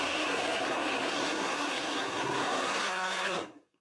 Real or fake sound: fake